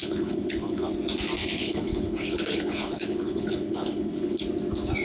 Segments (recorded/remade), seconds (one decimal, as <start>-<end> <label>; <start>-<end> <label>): 0.0-0.9 remade; 0.9-1.4 recorded; 1.4-4.4 remade; 4.4-5.0 recorded